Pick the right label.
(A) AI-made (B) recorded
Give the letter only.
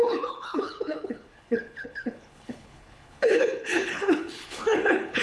A